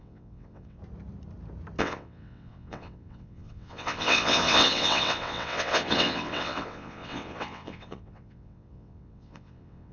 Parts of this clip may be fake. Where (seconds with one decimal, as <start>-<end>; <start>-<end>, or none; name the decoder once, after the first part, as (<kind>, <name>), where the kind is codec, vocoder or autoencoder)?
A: 0.0-0.8 (vocoder, WaveNeXt); 1.8-9.9